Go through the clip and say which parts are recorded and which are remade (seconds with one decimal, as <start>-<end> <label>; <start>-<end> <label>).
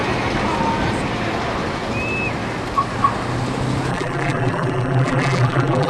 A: 0.0-3.9 recorded; 3.9-5.9 remade